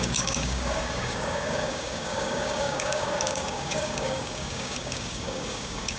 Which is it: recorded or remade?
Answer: remade